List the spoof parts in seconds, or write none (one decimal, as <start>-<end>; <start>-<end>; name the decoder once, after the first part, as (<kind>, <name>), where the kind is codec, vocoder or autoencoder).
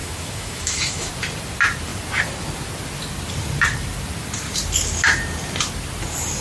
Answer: 0.0-1.1 (autoencoder, DAC-VAE)